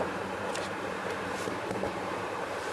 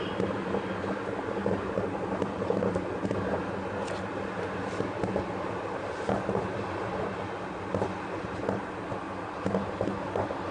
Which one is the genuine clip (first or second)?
second